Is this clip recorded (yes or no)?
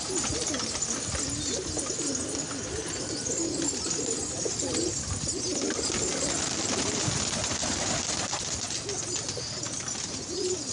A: yes